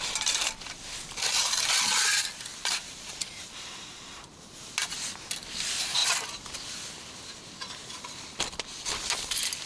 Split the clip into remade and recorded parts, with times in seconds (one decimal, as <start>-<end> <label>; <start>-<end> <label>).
0.0-2.5 recorded; 2.5-4.3 remade; 4.3-9.7 recorded